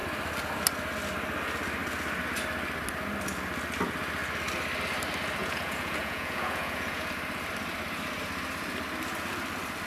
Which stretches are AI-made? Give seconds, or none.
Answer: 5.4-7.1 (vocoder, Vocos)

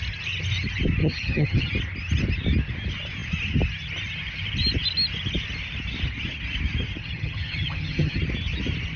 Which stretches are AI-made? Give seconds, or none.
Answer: 1.0-1.7 (vocoder, HiFi-GAN); 7.0-8.2

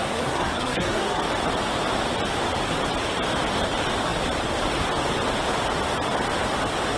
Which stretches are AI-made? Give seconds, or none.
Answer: 0.0-1.2 (codec, SNAC)

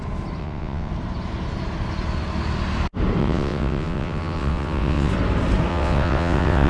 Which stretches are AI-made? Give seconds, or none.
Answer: 0.4-0.9 (vocoder, WaveNeXt); 3.2-5.1; 5.7-6.7

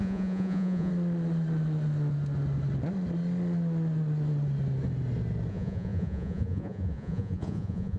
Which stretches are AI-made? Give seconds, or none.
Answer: 0.0-0.9 (vocoder, Vocos); 5.5-8.0